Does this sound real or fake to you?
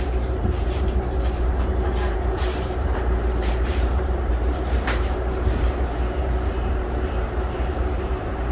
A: fake